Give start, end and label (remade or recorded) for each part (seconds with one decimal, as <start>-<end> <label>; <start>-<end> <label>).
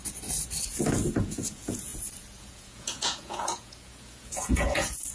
0.0-1.2 recorded; 1.2-1.9 remade; 1.9-2.4 recorded; 2.4-5.1 remade